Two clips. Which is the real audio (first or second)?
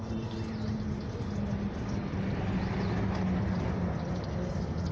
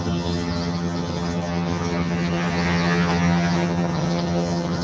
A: first